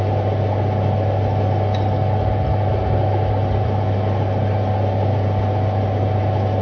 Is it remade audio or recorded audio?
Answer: recorded